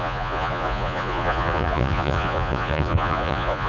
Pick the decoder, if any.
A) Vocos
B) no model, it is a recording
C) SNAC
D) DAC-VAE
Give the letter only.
A